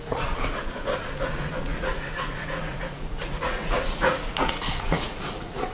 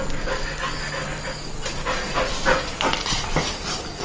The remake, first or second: first